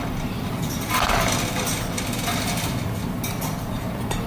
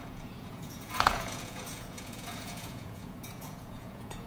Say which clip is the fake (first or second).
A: second